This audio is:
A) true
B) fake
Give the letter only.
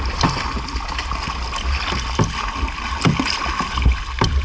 A